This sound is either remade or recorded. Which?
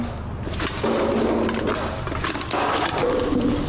recorded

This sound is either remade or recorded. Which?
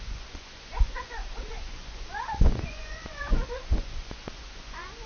remade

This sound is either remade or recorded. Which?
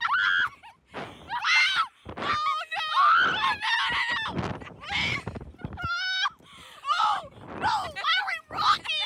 recorded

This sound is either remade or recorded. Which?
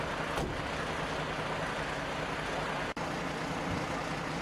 recorded